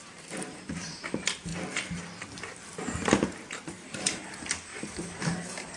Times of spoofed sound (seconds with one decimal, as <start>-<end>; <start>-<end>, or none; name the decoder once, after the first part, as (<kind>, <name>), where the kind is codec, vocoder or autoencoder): 0.0-1.5 (vocoder, BigVGAN v2); 2.8-4.7; 5.2-5.8